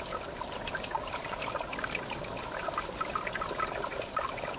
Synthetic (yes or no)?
no